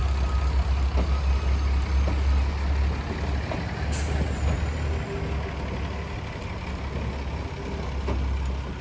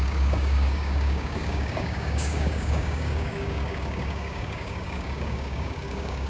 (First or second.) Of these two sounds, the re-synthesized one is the second